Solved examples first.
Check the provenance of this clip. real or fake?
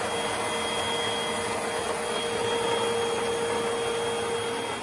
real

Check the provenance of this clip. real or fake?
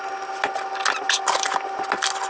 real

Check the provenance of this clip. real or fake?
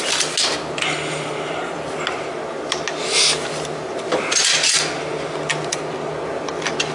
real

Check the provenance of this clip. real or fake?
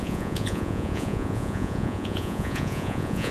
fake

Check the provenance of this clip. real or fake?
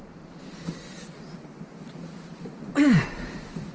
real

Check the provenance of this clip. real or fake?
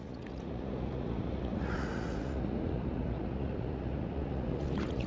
fake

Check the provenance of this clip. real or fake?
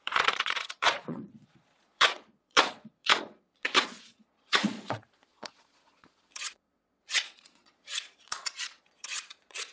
fake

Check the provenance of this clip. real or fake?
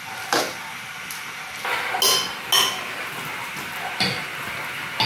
real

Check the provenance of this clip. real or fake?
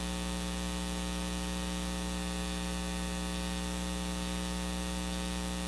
real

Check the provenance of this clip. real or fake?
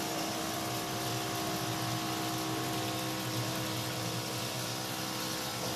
real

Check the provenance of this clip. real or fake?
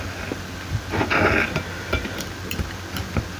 real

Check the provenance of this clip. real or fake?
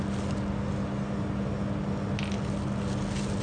real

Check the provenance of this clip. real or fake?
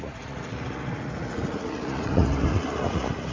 fake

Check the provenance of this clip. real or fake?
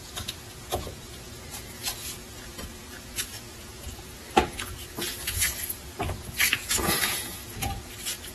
fake